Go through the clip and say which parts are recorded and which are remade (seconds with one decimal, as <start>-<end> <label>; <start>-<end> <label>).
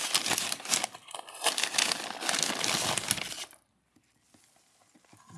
0.0-5.4 recorded